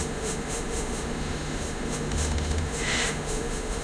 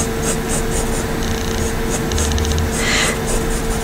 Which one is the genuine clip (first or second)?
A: second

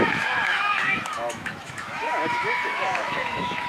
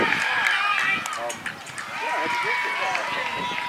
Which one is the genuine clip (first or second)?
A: second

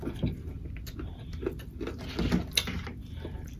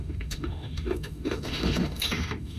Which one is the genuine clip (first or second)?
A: first